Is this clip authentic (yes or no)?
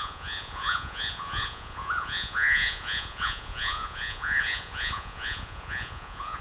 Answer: no